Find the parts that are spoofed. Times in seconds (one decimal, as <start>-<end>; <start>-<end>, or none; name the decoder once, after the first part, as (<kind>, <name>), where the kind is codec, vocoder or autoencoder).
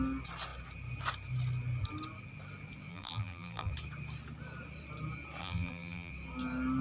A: 2.9-3.7 (vocoder, BigVGAN v2); 5.4-6.1